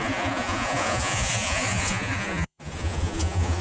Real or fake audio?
fake